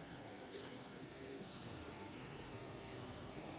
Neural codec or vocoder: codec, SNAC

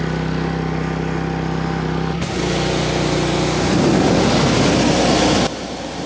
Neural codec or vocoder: none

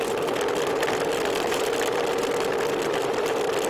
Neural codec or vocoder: none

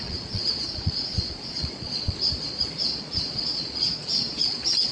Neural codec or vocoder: vocoder, Vocos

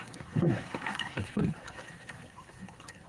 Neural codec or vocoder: codec, SNAC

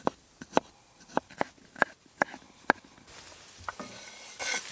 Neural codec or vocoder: none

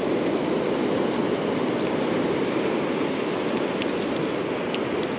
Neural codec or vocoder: none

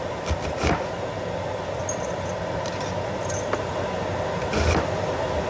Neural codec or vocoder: none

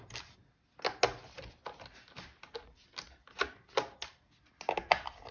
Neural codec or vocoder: none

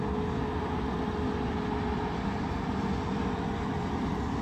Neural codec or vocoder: none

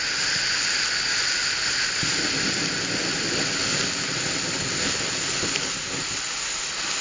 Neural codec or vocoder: none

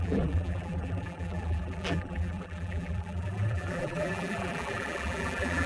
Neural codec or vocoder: vocoder, BigVGAN v2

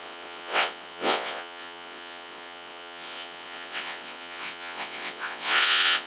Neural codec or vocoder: vocoder, WaveNeXt